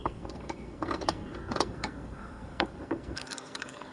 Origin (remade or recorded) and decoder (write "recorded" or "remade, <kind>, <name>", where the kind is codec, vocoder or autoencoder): remade, codec, SNAC